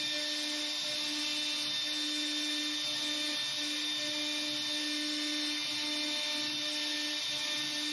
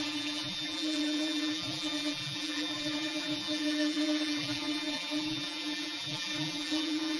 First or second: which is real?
first